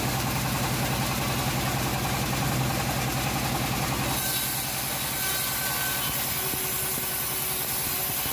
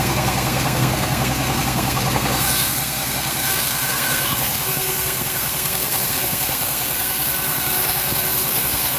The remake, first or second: second